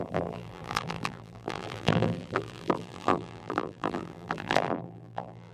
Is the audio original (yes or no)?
no